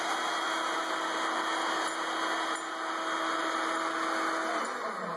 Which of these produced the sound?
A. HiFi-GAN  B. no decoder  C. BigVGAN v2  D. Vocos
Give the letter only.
B